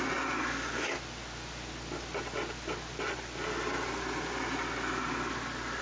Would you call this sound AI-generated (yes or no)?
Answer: no